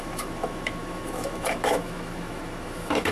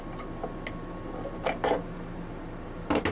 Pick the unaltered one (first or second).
second